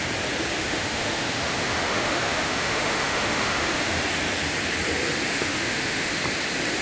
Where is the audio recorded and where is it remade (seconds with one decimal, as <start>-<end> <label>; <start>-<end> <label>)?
0.0-0.5 recorded; 0.5-4.0 remade; 4.0-5.3 recorded; 5.3-6.1 remade; 6.1-6.8 recorded